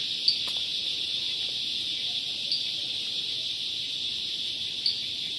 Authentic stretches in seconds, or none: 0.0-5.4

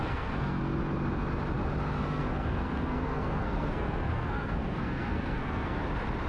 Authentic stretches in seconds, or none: 0.6-2.0; 5.8-6.3

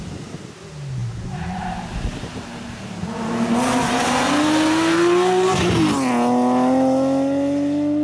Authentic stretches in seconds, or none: 0.0-1.0; 5.8-8.0

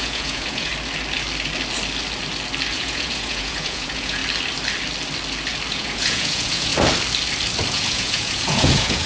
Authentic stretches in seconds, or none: 0.7-2.7; 4.2-5.7; 6.7-7.7

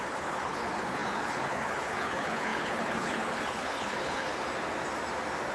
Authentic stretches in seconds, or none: 4.3-5.5

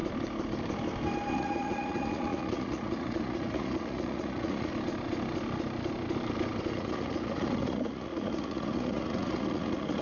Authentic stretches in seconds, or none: 0.0-1.3; 4.7-6.7

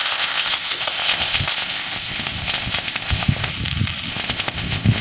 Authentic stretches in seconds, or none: 3.5-4.1